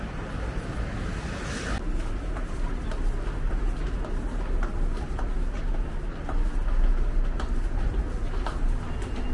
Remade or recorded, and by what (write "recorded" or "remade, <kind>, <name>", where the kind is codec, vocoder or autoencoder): recorded